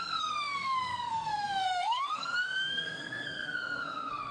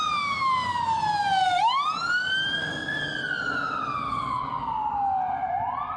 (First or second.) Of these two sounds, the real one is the second